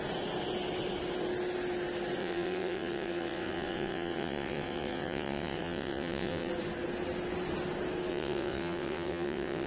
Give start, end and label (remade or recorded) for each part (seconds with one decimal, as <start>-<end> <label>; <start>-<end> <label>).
0.0-2.2 recorded; 2.2-6.5 remade; 6.5-8.1 recorded; 8.1-9.7 remade

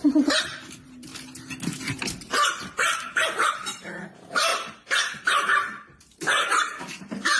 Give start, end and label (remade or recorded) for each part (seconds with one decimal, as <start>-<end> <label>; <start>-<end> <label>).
0.0-1.1 remade; 1.1-1.8 recorded; 1.8-4.5 remade; 4.5-5.1 recorded; 5.1-7.4 remade